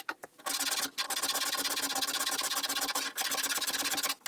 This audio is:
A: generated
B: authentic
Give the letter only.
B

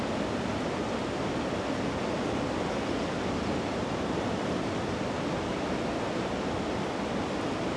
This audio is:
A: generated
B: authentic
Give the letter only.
B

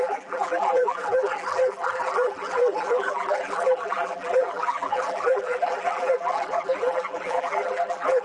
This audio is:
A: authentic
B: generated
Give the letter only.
B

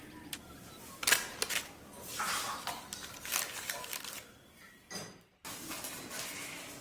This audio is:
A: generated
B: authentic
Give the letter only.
B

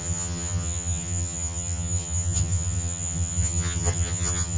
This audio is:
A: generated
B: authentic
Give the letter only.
A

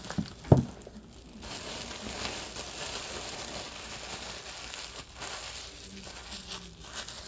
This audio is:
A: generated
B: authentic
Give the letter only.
B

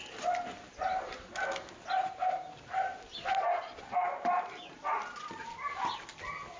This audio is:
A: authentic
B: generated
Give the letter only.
A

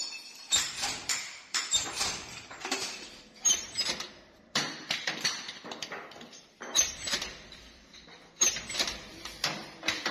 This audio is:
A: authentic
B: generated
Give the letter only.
B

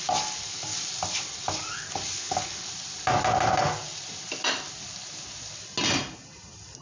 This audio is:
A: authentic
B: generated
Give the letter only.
A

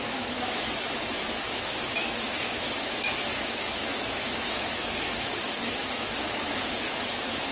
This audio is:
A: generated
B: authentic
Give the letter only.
A